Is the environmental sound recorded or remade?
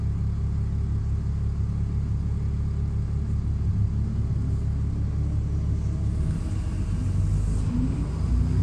recorded